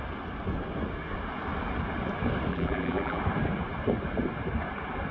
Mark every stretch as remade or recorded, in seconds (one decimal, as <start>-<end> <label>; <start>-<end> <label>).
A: 0.0-2.5 recorded; 2.5-3.2 remade; 3.2-5.1 recorded